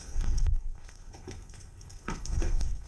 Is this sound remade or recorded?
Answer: remade